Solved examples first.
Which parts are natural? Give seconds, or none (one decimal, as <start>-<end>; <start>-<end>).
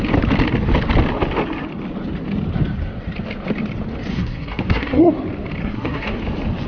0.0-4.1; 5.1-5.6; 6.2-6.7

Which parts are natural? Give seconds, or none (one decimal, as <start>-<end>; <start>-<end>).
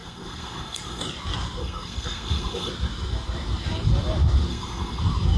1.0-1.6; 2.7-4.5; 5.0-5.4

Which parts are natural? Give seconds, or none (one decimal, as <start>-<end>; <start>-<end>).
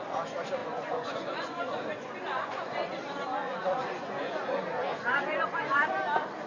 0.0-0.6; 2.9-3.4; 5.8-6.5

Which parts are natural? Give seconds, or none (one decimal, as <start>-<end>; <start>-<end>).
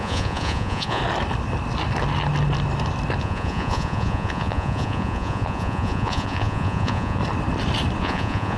1.0-3.2; 7.2-8.0